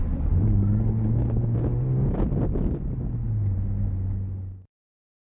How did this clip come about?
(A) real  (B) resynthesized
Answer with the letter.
A